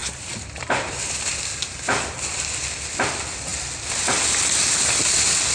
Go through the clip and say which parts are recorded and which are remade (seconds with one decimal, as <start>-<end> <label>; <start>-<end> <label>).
0.0-5.5 recorded